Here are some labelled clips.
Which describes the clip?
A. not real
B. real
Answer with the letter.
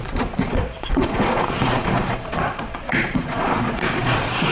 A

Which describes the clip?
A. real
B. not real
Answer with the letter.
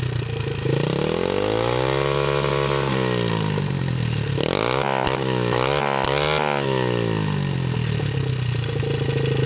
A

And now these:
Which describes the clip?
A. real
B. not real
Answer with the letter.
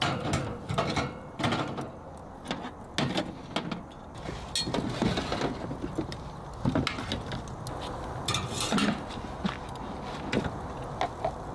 A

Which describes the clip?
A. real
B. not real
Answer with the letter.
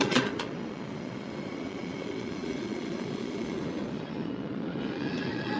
B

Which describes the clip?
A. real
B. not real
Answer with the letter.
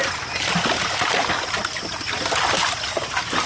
A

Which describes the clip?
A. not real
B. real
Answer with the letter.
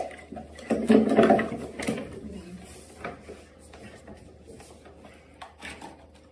B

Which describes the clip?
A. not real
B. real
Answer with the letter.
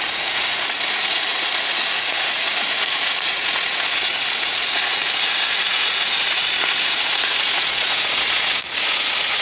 A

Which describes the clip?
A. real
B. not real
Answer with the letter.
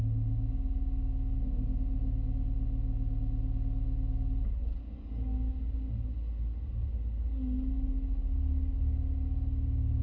A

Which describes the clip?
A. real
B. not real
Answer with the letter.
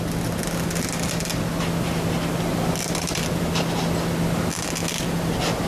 A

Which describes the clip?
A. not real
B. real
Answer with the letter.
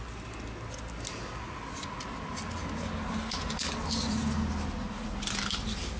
B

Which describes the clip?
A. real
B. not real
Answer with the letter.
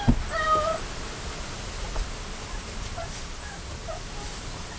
A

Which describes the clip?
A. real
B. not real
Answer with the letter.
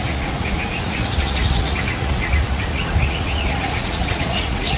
B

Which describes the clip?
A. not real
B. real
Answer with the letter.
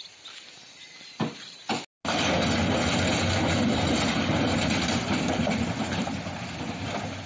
B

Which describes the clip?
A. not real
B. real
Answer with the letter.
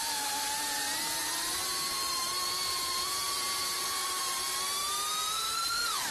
B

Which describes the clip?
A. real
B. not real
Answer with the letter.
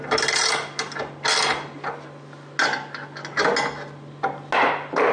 A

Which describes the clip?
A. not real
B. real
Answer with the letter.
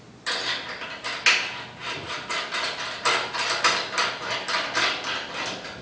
B